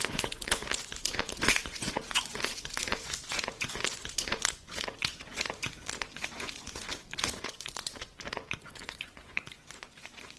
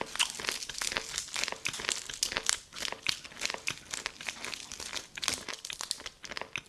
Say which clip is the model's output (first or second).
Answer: first